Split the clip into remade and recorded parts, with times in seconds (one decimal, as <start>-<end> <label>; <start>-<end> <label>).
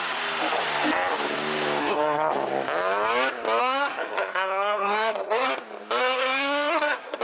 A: 0.0-1.8 recorded; 1.8-2.3 remade; 2.3-3.6 recorded; 3.6-5.5 remade; 5.5-6.0 recorded; 6.0-7.2 remade